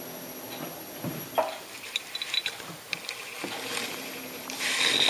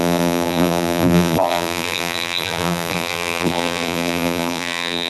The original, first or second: first